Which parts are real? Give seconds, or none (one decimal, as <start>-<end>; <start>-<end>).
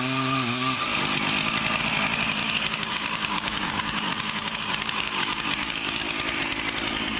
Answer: 0.0-2.4; 6.0-7.2